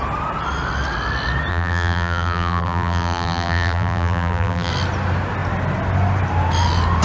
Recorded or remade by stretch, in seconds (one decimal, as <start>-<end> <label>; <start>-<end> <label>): 0.0-1.5 recorded; 1.5-4.7 remade; 4.7-7.0 recorded